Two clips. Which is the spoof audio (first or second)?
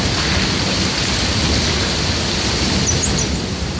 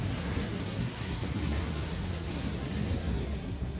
second